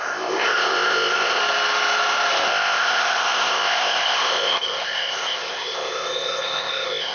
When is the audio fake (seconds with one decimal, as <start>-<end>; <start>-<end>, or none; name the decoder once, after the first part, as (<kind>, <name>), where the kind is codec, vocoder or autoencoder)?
0.0-1.4 (codec, ZipCodec); 2.5-7.1